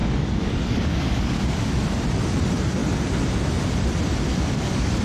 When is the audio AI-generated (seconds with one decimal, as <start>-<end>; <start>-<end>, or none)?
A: 0.0-1.7; 4.3-5.0